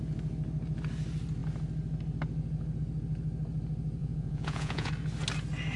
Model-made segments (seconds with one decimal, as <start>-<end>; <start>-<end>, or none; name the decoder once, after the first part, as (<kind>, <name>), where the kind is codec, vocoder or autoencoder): 4.0-4.9 (vocoder, Vocos)